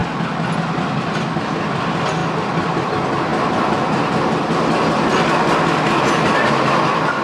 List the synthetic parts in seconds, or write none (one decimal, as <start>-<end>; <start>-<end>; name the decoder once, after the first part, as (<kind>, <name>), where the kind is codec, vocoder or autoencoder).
none